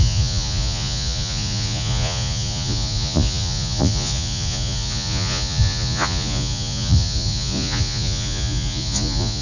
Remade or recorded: remade